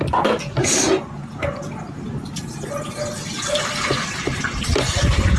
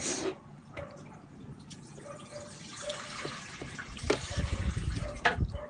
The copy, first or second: second